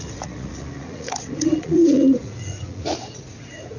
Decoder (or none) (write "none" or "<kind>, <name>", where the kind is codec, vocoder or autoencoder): vocoder, Vocos